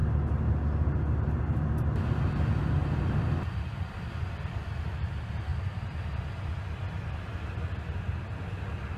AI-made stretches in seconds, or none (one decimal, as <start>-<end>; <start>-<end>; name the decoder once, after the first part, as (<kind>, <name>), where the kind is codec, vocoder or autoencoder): none